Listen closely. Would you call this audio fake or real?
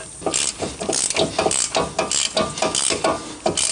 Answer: real